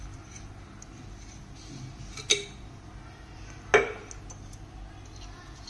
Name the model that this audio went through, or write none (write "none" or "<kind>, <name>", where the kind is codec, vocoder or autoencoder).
none